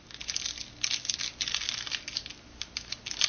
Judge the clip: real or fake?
real